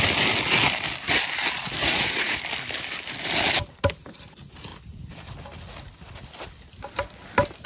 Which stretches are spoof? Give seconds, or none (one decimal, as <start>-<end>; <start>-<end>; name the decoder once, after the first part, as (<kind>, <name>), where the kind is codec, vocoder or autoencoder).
1.8-2.4 (vocoder, Vocos)

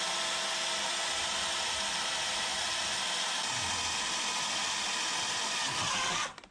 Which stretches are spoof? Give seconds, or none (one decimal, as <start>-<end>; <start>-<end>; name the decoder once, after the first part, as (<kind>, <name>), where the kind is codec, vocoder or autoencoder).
none

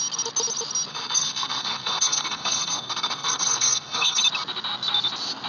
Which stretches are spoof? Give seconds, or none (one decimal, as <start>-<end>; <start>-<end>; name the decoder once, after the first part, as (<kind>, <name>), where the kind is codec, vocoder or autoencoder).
0.9-4.2 (codec, SNAC)

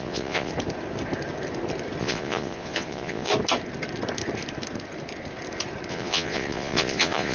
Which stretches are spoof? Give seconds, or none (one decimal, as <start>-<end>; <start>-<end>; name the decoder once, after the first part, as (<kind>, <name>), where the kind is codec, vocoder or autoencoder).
0.0-0.5 (vocoder, Vocos); 2.0-3.3; 5.9-7.3